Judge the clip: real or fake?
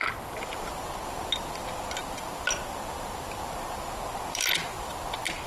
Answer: real